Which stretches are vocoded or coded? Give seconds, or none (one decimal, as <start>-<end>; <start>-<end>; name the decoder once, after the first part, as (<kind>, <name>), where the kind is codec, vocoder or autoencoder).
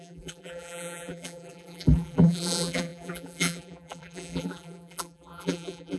0.0-6.0 (vocoder, BigVGAN v2)